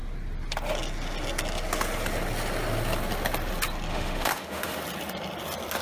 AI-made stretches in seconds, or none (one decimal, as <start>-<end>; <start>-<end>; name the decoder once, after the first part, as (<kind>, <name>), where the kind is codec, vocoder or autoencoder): 3.9-4.8 (autoencoder, DAC-VAE)